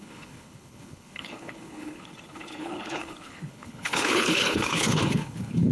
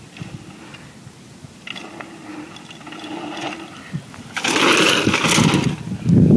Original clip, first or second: second